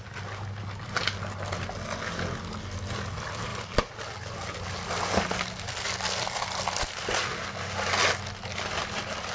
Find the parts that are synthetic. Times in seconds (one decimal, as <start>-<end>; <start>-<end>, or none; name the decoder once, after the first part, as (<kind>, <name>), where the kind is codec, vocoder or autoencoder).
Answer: none